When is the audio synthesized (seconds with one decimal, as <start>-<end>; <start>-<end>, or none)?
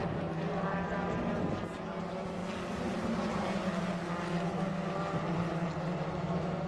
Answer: none